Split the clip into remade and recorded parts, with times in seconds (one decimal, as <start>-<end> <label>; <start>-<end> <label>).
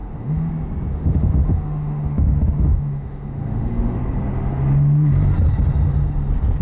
0.0-0.5 remade; 0.5-0.9 recorded; 0.9-4.0 remade; 4.0-6.6 recorded